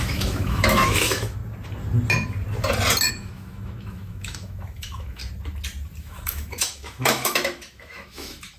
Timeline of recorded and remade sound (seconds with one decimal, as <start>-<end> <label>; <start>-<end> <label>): 0.0-1.4 remade; 1.4-3.1 recorded; 3.1-5.2 remade; 5.2-6.0 recorded; 6.0-8.6 remade